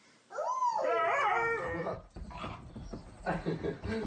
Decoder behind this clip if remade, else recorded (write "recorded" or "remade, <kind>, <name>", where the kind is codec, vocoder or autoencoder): recorded